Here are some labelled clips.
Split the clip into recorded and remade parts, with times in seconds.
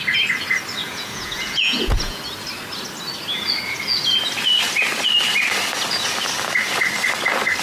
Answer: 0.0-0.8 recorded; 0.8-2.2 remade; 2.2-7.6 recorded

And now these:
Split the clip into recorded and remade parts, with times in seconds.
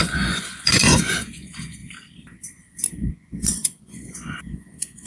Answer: 0.0-1.8 remade; 1.8-3.1 recorded; 3.1-5.1 remade